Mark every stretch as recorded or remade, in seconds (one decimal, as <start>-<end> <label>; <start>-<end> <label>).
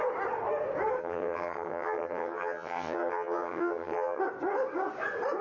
0.0-1.0 recorded; 1.0-4.2 remade; 4.2-5.4 recorded